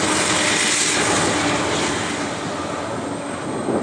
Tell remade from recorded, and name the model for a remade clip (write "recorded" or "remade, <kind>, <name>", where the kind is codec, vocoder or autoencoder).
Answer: recorded